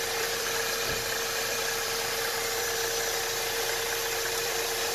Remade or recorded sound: remade